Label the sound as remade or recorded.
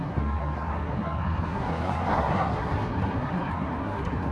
remade